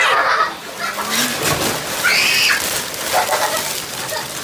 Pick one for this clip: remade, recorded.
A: recorded